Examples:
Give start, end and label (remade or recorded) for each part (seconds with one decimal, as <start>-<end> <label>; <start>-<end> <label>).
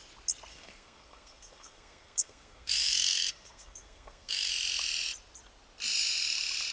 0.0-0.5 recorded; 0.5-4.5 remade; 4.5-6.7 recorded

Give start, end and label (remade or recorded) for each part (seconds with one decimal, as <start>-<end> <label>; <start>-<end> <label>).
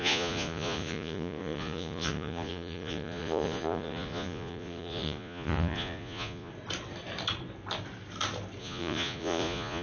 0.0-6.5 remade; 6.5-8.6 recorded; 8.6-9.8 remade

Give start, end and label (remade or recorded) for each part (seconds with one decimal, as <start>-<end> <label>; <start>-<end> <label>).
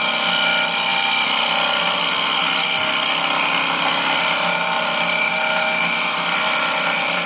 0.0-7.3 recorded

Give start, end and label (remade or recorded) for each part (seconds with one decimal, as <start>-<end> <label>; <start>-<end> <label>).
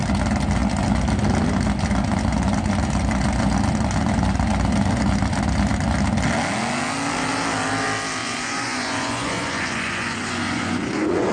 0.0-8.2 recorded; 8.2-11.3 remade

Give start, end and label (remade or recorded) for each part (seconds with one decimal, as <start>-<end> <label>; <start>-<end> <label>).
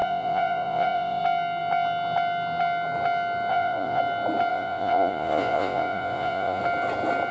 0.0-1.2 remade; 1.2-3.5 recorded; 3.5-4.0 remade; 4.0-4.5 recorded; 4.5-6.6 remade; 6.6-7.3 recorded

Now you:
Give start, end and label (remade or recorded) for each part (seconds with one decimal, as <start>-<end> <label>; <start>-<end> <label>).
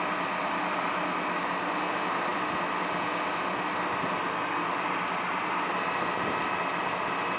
0.0-7.4 recorded